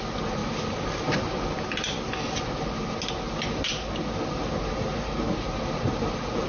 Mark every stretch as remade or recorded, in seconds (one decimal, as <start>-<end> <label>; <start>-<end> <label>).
0.0-0.4 remade; 0.4-4.2 recorded; 4.2-6.5 remade